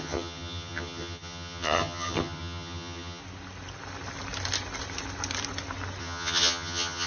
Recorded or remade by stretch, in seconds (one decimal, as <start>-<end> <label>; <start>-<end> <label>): 0.0-3.2 remade; 3.2-6.0 recorded; 6.0-7.1 remade